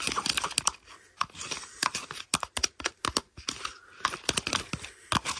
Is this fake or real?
real